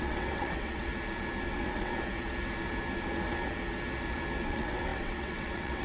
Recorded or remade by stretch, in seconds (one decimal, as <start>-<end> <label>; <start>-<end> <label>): 0.0-0.9 remade; 0.9-1.5 recorded; 1.5-1.9 remade; 1.9-4.4 recorded; 4.4-5.8 remade